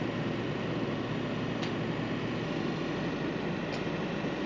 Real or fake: real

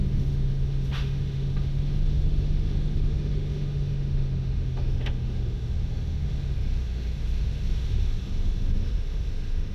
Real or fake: fake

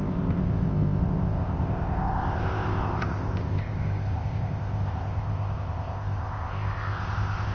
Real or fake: fake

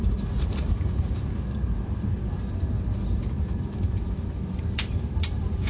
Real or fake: fake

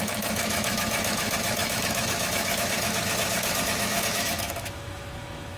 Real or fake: fake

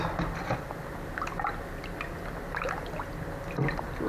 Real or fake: real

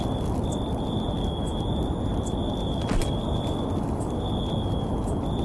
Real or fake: real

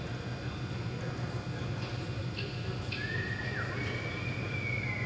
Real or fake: real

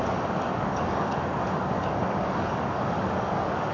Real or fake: fake